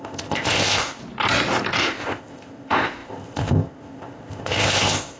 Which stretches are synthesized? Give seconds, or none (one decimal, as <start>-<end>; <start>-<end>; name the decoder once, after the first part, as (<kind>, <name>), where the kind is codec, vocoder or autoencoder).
0.0-1.0 (codec, ZipCodec); 1.8-5.2